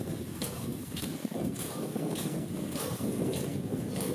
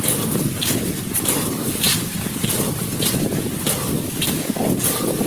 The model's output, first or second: first